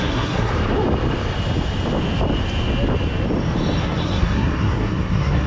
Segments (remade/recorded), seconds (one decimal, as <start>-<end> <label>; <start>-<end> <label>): 0.0-0.5 remade; 0.5-3.8 recorded; 3.8-5.5 remade